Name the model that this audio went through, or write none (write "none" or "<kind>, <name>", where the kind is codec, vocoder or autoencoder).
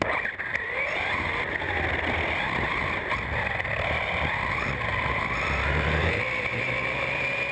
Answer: none